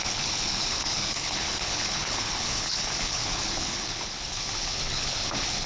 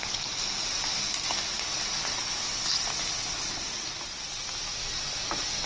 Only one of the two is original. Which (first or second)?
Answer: second